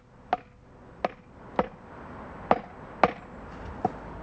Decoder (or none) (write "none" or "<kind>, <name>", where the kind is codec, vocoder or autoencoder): none